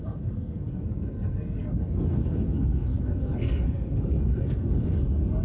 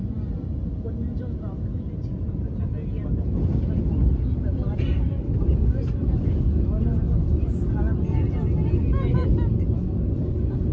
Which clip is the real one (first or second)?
second